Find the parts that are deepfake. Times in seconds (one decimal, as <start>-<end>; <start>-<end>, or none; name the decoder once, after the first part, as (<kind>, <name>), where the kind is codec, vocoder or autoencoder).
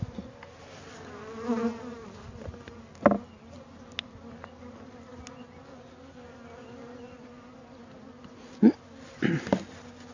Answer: none